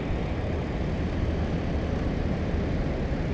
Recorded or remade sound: recorded